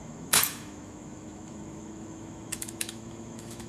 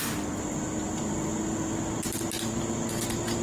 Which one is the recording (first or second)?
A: second